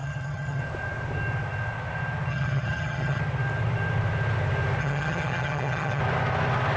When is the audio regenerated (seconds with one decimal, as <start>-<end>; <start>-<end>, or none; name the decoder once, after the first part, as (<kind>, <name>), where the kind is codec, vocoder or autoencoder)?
0.0-0.6 (vocoder, HiFi-GAN); 2.3-3.2; 4.8-6.0